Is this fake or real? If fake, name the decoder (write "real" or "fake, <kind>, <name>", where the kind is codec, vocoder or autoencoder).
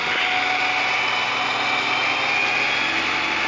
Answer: real